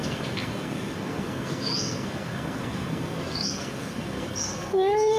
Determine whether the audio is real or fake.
fake